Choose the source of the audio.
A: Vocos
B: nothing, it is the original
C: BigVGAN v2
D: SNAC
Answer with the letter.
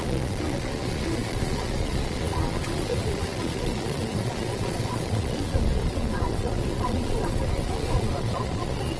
A